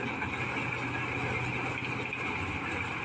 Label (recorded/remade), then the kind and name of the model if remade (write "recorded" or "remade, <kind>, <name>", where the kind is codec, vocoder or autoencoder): recorded